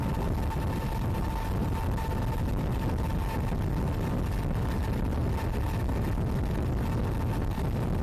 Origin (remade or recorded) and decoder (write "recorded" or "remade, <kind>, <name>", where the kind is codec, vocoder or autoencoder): recorded